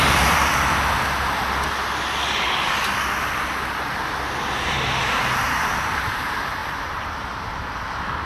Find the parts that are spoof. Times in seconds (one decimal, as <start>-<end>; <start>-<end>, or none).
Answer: 0.0-0.5; 5.0-8.3